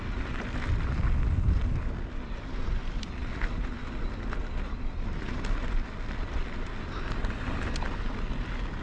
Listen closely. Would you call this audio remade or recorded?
recorded